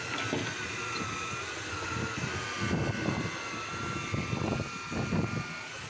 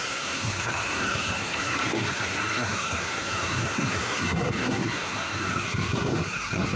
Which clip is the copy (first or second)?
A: second